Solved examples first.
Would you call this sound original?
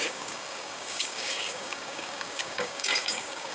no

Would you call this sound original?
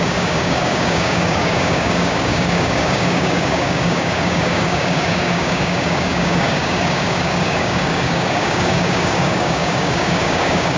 no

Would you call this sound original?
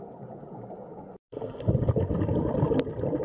yes